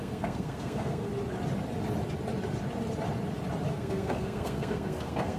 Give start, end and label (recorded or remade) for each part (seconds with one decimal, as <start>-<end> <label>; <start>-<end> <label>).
0.0-1.1 remade; 1.1-3.7 recorded; 3.7-5.4 remade